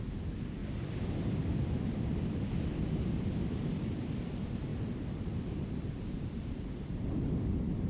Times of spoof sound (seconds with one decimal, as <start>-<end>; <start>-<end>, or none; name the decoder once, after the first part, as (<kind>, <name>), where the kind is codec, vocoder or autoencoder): 0.6-2.7 (vocoder, BigVGAN v2); 4.7-7.9